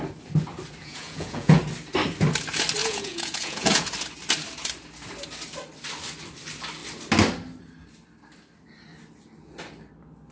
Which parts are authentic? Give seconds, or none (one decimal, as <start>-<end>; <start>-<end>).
0.0-0.8; 1.6-2.8; 3.9-10.3